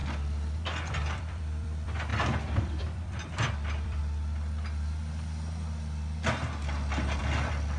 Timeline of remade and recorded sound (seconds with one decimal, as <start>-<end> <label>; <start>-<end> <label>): 0.0-0.9 recorded; 0.9-4.0 remade; 4.0-7.2 recorded; 7.2-7.8 remade